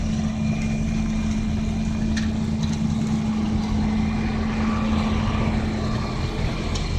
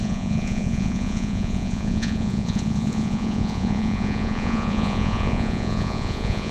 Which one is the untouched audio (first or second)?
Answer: first